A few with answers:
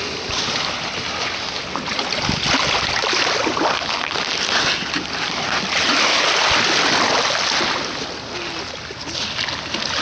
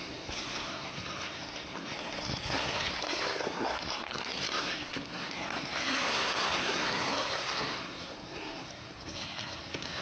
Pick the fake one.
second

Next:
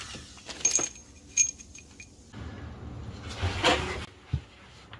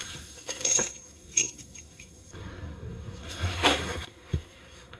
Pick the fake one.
second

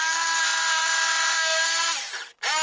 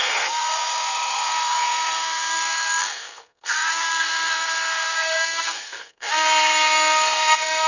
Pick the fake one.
second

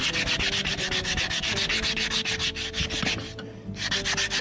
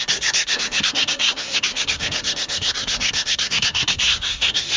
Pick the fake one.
second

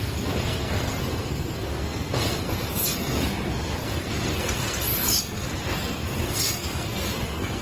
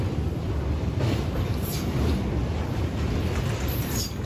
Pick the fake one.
first